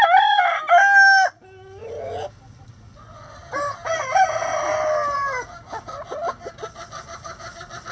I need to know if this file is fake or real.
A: real